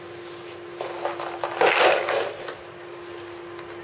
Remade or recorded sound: recorded